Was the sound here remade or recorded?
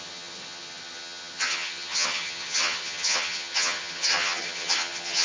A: remade